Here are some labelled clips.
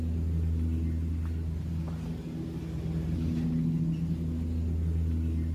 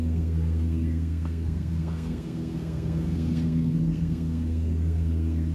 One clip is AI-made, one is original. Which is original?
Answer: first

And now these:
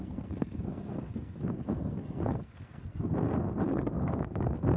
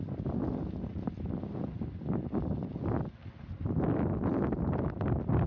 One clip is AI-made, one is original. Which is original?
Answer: second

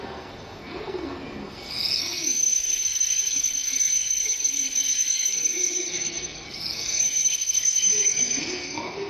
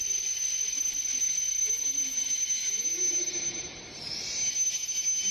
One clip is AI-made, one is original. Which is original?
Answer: second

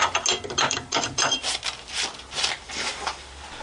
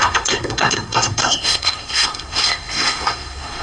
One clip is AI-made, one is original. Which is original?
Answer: first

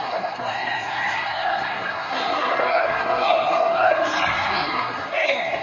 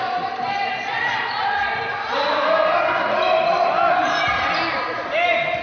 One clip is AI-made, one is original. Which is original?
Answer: second